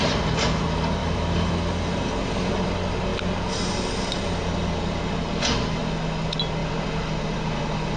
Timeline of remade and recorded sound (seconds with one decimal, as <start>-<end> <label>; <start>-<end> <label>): 0.0-1.0 recorded; 1.0-1.5 remade; 1.5-6.6 recorded; 6.6-7.6 remade; 7.6-8.0 recorded